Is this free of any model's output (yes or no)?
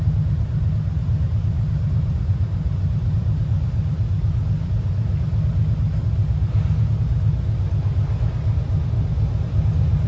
yes